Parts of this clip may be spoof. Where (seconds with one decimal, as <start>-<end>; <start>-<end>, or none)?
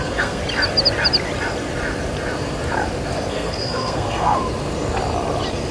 0.0-0.4; 3.3-4.4